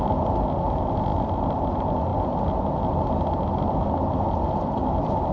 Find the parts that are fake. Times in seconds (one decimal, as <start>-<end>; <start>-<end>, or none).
none

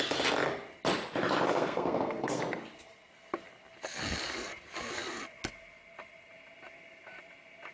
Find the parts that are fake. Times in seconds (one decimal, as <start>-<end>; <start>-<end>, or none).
1.5-2.4

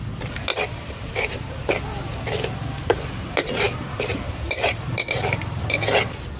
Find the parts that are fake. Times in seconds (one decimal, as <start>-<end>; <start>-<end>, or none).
0.5-1.7; 3.4-5.6

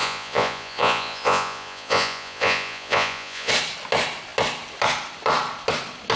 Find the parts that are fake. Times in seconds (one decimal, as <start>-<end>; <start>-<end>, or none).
0.0-3.5